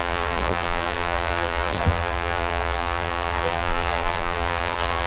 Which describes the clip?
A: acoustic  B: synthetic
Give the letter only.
B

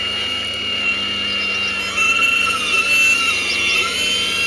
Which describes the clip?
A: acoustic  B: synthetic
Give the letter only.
A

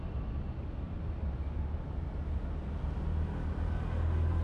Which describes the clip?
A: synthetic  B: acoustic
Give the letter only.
B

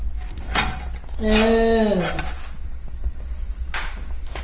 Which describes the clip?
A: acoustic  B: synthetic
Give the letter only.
A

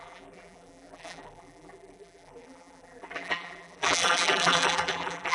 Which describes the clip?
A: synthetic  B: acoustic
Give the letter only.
A